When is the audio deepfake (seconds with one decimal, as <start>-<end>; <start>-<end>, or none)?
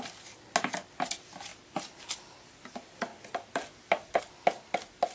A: none